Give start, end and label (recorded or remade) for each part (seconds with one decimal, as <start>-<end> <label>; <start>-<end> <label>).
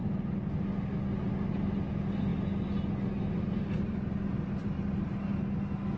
0.0-6.0 recorded